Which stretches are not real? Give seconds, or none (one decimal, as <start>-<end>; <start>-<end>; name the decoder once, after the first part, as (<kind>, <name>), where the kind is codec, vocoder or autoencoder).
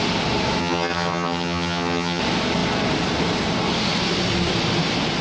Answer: 0.6-2.2 (vocoder, HiFi-GAN)